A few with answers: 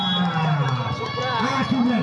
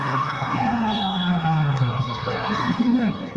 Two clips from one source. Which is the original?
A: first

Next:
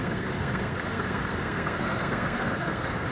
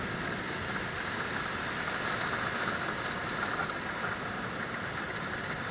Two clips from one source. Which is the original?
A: second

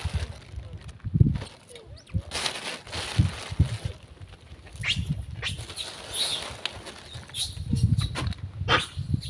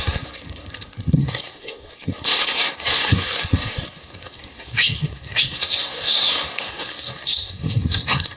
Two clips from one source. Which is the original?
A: first